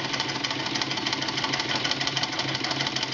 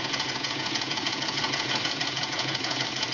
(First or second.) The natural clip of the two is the first